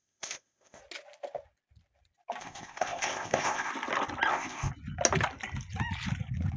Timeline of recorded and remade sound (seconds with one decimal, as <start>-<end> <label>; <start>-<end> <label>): 0.0-0.8 remade; 0.8-2.4 recorded; 2.4-3.7 remade; 3.7-4.3 recorded; 4.3-4.7 remade; 4.7-6.6 recorded